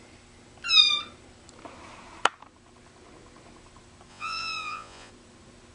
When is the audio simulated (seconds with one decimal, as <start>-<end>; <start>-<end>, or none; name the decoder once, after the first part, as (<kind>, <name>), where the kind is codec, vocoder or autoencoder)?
4.1-5.1 (vocoder, Vocos)